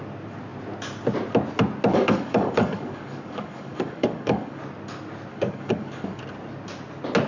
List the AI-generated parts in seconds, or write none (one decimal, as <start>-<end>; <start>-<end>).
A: 1.9-4.6; 5.3-6.2

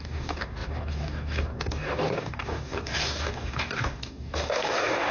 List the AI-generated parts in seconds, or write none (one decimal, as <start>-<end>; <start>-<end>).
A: 0.0-5.1